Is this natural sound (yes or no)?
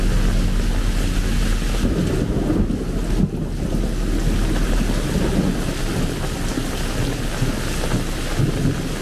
yes